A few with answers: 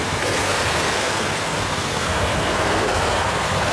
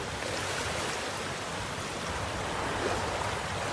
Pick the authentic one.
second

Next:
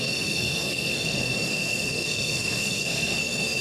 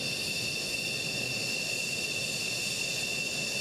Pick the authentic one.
second